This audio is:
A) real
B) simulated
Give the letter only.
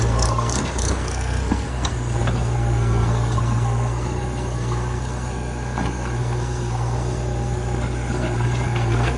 B